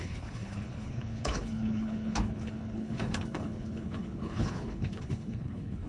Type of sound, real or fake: fake